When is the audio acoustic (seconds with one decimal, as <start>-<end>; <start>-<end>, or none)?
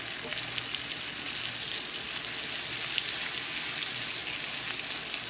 0.0-5.3